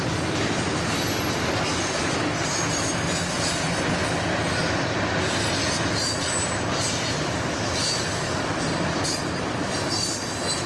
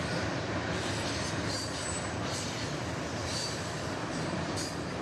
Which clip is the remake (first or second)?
second